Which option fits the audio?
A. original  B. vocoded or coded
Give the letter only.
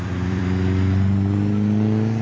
B